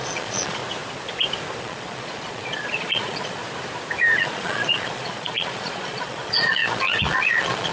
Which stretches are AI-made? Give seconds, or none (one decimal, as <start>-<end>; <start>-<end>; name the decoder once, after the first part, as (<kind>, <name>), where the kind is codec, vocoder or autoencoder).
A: 0.0-0.6 (vocoder, Vocos); 1.6-3.4; 4.2-7.7